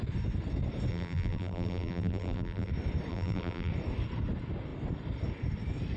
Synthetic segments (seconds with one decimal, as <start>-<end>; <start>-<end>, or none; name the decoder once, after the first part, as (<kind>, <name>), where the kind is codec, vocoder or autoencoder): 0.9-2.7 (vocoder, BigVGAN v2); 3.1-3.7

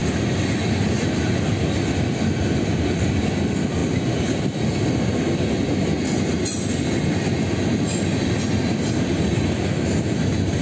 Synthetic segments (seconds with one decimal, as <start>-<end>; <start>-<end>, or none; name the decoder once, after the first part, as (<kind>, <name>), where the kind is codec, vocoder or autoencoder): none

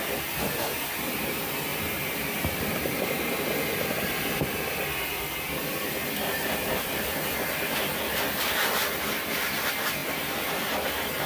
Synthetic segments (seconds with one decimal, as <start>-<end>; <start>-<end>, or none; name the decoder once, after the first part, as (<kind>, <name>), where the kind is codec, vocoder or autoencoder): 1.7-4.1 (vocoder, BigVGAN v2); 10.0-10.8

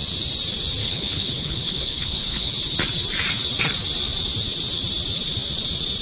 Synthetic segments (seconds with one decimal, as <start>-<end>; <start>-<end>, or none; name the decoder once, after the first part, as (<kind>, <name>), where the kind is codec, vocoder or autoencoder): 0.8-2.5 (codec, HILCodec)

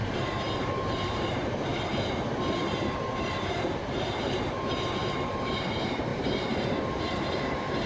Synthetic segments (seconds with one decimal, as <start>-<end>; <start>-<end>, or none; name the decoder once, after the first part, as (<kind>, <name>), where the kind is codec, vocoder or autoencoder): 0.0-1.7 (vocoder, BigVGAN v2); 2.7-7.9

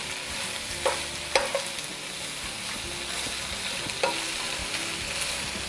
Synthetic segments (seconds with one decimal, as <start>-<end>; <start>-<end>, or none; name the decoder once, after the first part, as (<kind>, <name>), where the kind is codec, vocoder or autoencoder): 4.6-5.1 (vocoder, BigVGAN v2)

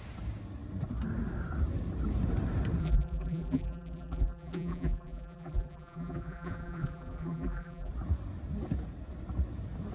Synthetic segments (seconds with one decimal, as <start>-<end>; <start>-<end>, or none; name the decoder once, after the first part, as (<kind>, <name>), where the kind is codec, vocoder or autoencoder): 2.8-7.9 (vocoder, BigVGAN v2)